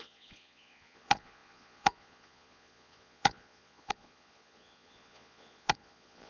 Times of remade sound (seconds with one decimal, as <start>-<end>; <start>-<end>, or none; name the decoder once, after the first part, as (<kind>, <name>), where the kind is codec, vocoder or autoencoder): 0.0-6.3 (vocoder, Vocos)